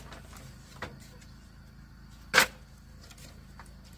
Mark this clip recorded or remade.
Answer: recorded